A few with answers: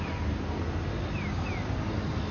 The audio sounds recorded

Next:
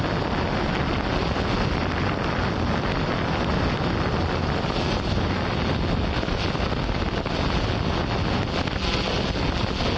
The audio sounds recorded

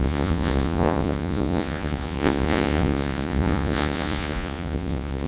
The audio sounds remade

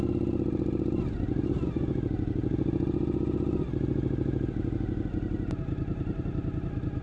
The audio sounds recorded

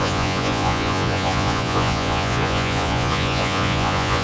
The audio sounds remade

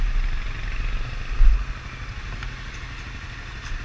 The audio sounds recorded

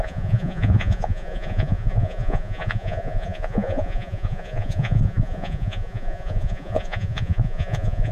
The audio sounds remade